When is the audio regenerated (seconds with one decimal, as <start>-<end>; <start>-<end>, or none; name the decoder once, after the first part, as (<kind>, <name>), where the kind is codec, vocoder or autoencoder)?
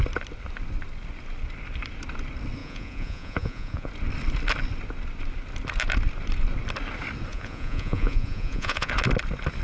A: 2.6-3.9 (vocoder, Vocos); 7.3-8.9